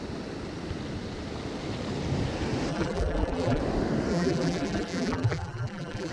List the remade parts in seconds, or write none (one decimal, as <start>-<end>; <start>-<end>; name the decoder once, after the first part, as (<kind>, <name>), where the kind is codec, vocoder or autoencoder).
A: 2.7-3.6 (vocoder, BigVGAN v2); 4.1-6.1